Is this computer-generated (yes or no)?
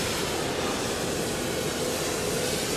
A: no